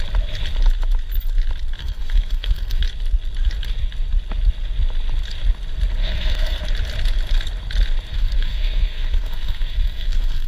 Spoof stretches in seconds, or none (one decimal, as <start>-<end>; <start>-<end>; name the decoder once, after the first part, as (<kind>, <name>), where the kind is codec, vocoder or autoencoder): 1.8-2.8 (codec, SNAC); 6.0-6.6; 8.1-10.5